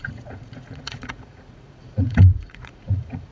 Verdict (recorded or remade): remade